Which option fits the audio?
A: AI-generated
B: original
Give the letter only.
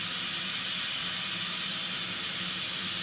B